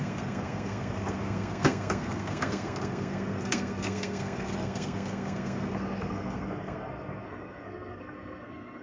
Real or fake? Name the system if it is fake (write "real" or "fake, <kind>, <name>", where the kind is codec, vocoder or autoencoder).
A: fake, codec, SNAC